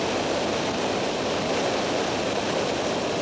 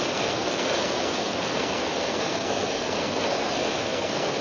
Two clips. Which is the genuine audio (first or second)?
first